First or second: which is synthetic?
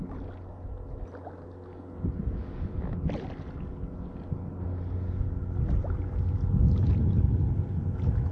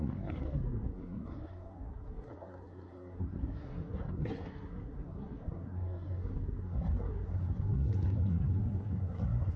second